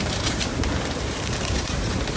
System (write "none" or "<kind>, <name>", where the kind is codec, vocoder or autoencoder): vocoder, BigVGAN v2